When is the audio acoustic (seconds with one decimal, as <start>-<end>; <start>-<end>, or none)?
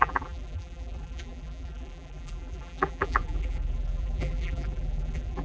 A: none